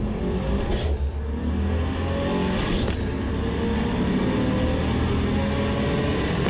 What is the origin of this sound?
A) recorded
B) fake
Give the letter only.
A